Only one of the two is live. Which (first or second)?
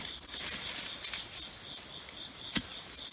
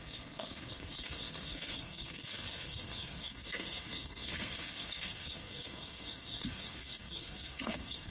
first